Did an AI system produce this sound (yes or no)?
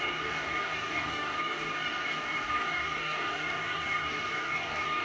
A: yes